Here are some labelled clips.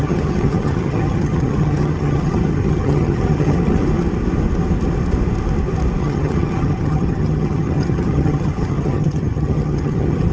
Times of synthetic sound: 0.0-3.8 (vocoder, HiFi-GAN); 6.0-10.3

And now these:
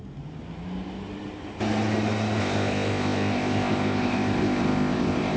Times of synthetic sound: 2.4-5.4 (codec, ZipCodec)

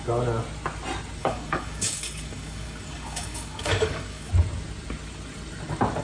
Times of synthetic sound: 1.2-4.3 (codec, DAC)

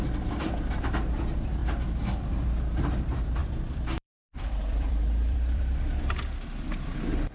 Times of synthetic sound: 0.0-1.6 (vocoder, BigVGAN v2); 2.3-7.3

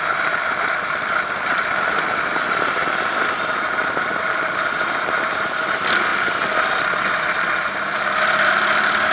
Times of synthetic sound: none

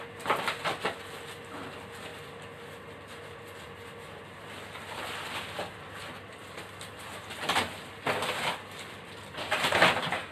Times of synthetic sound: none